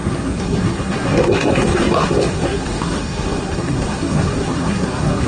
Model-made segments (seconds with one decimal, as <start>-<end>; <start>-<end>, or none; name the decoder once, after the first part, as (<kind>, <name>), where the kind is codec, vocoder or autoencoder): 0.0-5.3 (codec, SNAC)